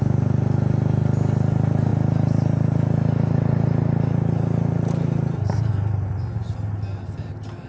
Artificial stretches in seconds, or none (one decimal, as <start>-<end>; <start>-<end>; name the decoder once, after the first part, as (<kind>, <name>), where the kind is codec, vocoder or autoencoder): none